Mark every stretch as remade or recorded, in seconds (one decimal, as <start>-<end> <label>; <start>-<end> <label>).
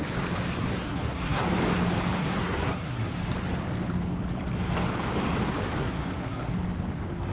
0.0-0.6 recorded; 0.6-1.4 remade; 1.4-2.2 recorded; 2.2-3.2 remade; 3.2-5.8 recorded; 5.8-6.5 remade; 6.5-7.3 recorded